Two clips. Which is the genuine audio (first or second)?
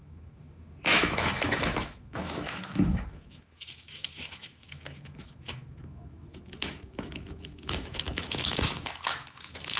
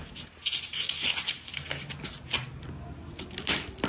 second